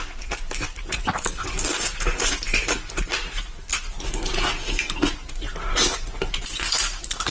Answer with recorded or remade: recorded